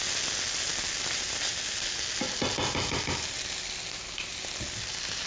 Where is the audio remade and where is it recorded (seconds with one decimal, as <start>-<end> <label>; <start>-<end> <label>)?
0.0-5.3 recorded